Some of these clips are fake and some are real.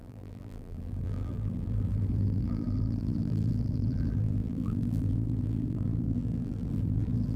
fake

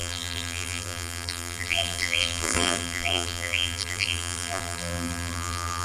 fake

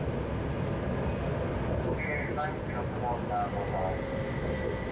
real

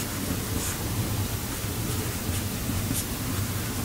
real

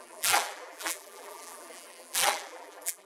fake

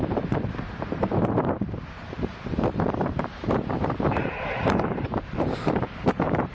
fake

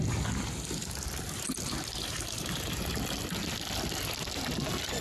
real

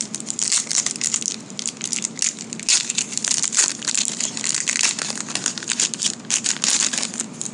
real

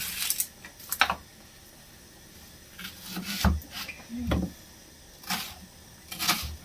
real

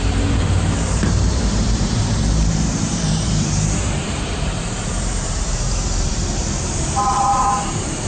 fake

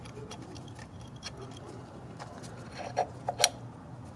real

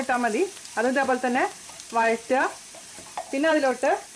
fake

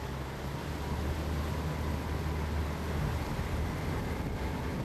real